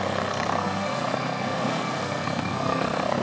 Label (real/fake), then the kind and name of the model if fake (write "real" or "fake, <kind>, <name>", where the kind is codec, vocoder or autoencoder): fake, codec, SNAC